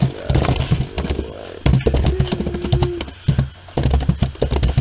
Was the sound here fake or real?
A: real